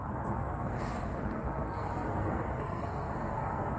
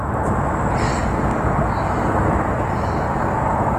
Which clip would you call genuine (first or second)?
second